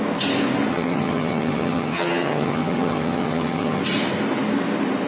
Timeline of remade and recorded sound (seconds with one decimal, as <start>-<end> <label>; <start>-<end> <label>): 0.0-0.7 recorded; 0.7-3.8 remade; 3.8-5.1 recorded

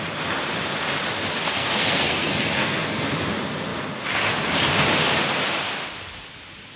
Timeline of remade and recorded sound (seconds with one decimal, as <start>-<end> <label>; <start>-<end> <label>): 0.0-1.5 recorded; 1.5-3.1 remade; 3.1-6.8 recorded

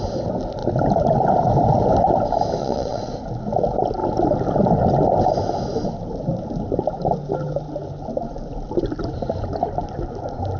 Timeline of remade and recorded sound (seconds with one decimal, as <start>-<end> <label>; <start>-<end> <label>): 0.0-2.6 recorded; 2.6-3.1 remade; 3.1-10.6 recorded

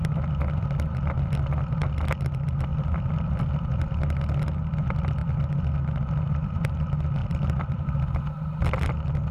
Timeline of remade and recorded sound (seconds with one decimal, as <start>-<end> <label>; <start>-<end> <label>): 0.0-2.7 recorded; 2.7-3.4 remade; 3.4-7.2 recorded; 7.2-8.1 remade; 8.1-9.3 recorded

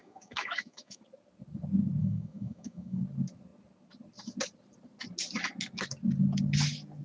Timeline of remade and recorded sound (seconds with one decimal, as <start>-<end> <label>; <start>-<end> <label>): 0.0-1.0 remade; 1.0-2.0 recorded; 2.0-3.0 remade; 3.0-7.0 recorded

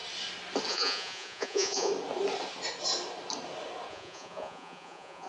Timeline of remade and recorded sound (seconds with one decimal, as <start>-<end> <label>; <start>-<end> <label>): 0.0-0.7 recorded; 0.7-1.9 remade; 1.9-3.9 recorded; 3.9-5.3 remade